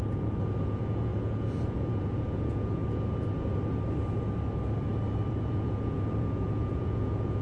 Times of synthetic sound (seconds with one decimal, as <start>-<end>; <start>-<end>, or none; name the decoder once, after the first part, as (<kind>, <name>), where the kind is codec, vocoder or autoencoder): 0.0-2.8 (vocoder, Vocos); 5.5-7.4